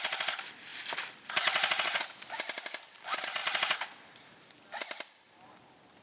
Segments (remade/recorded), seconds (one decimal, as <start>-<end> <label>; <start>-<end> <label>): 0.0-3.4 recorded; 3.4-4.5 remade; 4.5-6.0 recorded